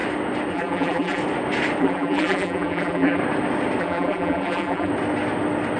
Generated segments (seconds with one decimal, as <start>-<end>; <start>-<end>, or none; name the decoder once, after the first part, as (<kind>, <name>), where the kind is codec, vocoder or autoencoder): 0.5-1.2 (vocoder, BigVGAN v2); 1.8-3.2; 3.8-4.9

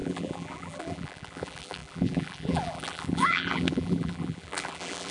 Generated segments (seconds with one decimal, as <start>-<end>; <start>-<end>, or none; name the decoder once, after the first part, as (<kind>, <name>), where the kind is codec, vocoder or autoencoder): 0.0-5.1 (vocoder, BigVGAN v2)